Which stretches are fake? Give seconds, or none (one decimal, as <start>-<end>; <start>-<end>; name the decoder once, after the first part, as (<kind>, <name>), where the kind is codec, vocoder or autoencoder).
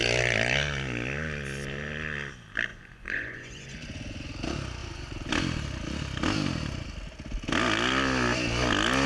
2.7-4.3 (vocoder, Vocos); 4.8-5.3